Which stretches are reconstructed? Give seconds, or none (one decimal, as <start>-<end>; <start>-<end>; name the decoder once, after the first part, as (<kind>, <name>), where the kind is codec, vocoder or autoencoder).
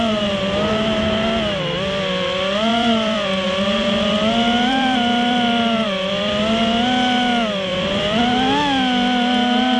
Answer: 2.7-6.4 (vocoder, BigVGAN v2); 7.7-8.2